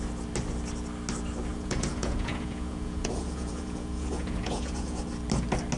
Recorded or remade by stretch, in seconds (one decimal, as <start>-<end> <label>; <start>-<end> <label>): 0.0-1.5 recorded; 1.5-5.0 remade; 5.0-5.8 recorded